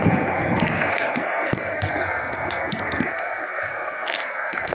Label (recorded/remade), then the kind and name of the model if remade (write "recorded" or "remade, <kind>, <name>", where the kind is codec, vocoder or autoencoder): remade, codec, SNAC